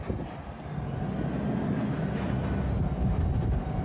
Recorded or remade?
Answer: recorded